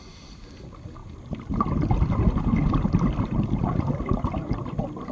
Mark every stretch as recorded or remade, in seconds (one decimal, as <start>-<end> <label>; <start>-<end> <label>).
0.0-5.1 recorded